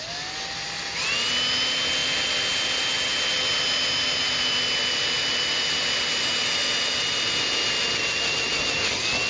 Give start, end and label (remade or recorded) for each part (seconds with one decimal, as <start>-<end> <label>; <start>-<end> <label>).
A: 0.0-9.3 recorded